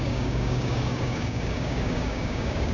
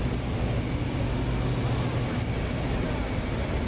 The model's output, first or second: first